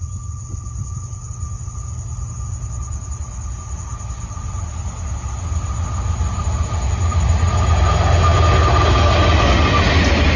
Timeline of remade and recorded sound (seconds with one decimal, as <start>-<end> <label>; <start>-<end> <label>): 0.0-10.4 recorded